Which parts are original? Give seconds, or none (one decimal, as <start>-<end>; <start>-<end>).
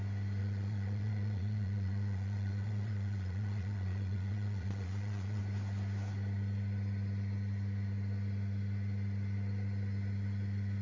0.0-0.4; 5.4-10.8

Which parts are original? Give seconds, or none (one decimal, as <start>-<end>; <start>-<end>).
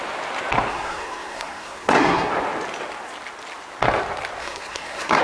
0.0-0.7; 2.3-4.4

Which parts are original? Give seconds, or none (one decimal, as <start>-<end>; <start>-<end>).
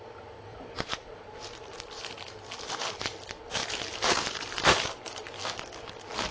0.0-0.5; 2.4-3.6; 5.2-6.3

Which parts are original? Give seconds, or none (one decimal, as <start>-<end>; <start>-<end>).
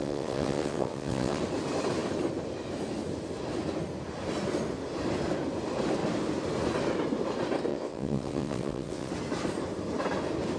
1.4-7.7; 9.1-10.6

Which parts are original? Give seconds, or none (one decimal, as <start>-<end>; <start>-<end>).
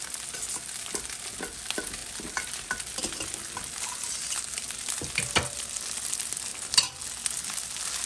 0.0-8.1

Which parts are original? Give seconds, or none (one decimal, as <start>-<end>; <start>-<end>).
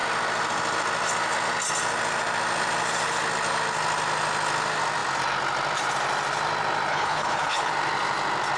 0.0-6.9; 7.7-8.6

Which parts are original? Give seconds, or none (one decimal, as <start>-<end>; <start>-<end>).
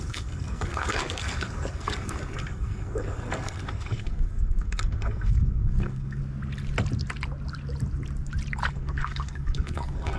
6.2-8.7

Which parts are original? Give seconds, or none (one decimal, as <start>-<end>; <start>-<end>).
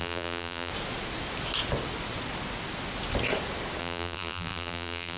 0.7-3.8